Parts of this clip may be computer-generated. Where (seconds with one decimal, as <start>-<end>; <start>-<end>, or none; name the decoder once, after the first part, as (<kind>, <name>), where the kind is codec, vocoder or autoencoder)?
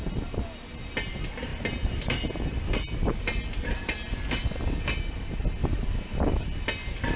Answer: 5.6-6.2 (vocoder, BigVGAN v2)